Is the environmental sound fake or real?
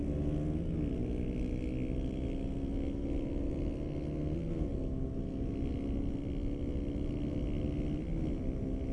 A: real